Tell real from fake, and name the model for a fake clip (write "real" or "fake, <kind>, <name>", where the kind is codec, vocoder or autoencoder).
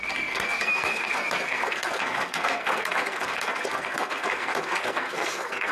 fake, codec, SNAC